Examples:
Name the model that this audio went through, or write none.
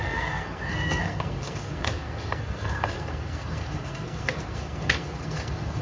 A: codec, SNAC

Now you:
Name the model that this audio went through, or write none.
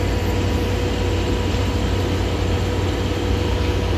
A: none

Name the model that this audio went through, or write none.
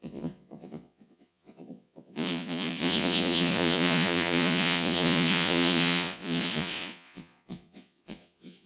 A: vocoder, Vocos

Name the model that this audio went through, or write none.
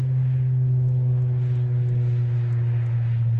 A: none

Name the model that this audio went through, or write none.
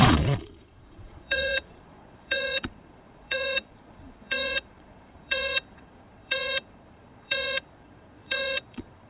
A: vocoder, Vocos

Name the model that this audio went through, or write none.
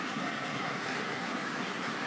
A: codec, SNAC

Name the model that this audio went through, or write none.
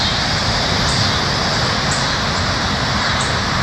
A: none